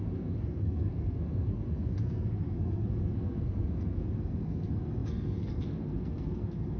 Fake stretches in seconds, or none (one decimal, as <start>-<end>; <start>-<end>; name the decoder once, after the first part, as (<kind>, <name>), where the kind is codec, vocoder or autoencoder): 0.0-6.8 (codec, SNAC)